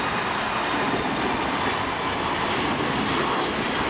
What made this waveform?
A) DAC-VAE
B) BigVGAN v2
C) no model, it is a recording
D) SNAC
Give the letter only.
C